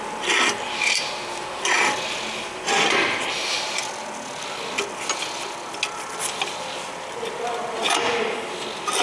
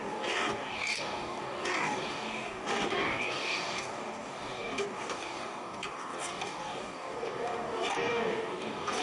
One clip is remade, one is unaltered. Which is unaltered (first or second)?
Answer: first